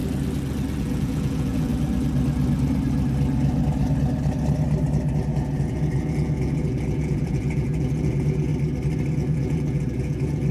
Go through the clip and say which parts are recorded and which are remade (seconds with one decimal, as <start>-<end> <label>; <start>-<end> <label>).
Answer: 0.0-0.8 recorded; 0.8-1.7 remade; 1.7-5.3 recorded; 5.3-8.5 remade; 8.5-9.1 recorded; 9.1-10.5 remade